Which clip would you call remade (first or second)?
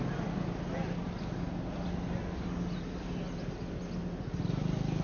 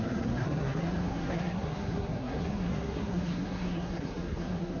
second